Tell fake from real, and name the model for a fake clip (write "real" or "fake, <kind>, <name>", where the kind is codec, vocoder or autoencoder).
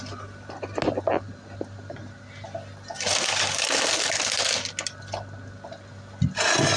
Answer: real